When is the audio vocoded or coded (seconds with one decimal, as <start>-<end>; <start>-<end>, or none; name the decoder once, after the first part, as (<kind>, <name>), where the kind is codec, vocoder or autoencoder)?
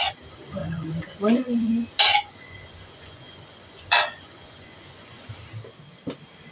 0.6-1.7 (vocoder, Vocos); 2.1-5.3